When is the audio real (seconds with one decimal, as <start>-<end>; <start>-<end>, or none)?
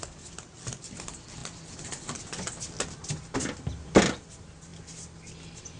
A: 0.0-4.7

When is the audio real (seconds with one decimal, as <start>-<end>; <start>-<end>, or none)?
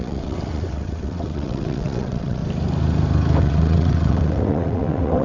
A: 2.4-3.4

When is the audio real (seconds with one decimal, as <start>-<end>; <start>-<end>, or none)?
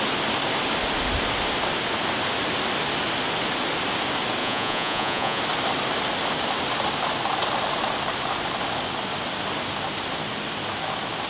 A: 0.0-4.4; 5.4-11.3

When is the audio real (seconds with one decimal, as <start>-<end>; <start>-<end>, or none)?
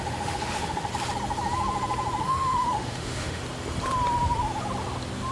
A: 0.9-2.2; 3.4-5.3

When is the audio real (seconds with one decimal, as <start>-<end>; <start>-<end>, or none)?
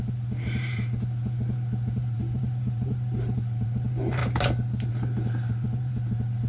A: 4.2-4.9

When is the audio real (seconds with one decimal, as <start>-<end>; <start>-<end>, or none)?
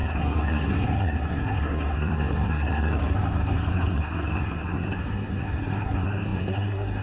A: none